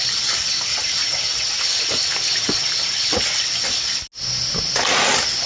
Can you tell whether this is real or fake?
real